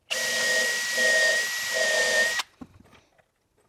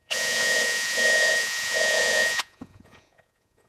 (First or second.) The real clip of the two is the first